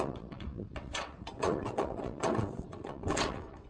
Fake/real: fake